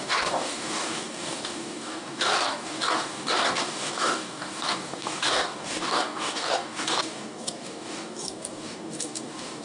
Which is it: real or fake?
fake